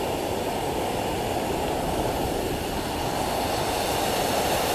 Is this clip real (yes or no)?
yes